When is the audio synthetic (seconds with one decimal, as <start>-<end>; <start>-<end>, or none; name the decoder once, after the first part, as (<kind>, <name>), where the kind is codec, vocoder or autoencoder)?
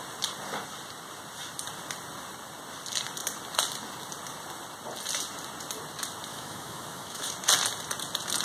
6.3-7.3 (autoencoder, DAC-VAE)